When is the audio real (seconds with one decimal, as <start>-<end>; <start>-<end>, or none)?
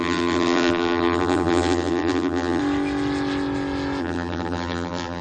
2.6-4.0